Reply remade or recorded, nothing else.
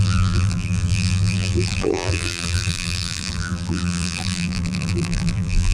remade